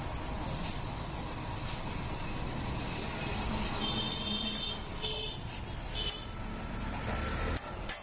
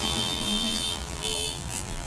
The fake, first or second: second